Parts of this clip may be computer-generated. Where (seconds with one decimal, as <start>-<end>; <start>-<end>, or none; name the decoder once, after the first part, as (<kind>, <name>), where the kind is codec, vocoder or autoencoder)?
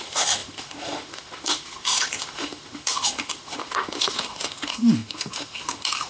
0.0-6.1 (autoencoder, DAC-VAE)